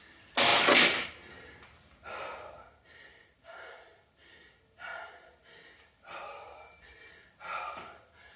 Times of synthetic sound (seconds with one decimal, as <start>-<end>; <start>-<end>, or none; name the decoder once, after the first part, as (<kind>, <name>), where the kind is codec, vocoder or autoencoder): none